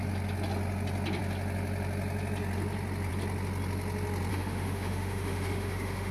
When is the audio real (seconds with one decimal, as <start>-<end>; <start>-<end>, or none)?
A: 0.0-4.3